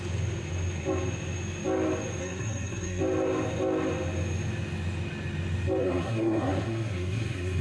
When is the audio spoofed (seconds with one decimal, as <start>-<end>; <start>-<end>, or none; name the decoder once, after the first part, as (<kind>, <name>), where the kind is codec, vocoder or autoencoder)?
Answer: 2.2-3.0 (codec, SNAC); 5.8-7.6